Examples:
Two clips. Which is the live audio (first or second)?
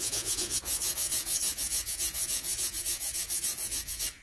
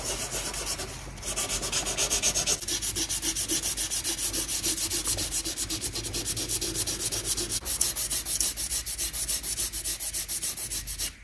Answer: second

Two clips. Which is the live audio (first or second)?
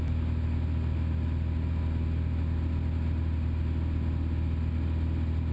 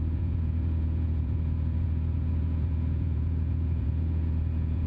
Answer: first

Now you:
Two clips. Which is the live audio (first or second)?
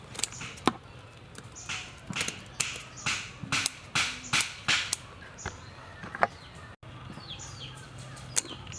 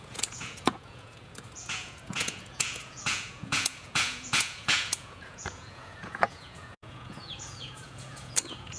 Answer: first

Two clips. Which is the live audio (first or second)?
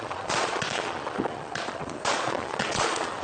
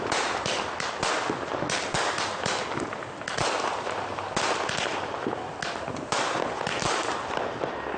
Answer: second